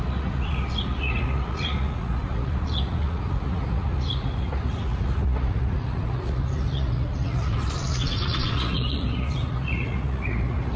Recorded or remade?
remade